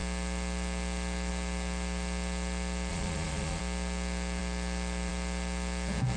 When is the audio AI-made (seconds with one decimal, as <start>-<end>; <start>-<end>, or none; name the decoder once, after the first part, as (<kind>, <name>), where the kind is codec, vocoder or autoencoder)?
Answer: 2.9-3.6 (vocoder, Vocos)